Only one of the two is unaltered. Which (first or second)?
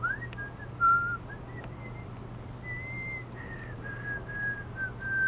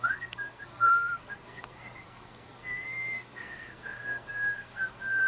first